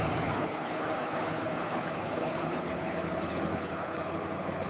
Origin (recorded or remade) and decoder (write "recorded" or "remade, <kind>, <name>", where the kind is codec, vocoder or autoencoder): remade, codec, HILCodec